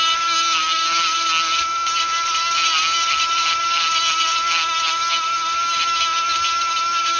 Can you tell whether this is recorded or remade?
recorded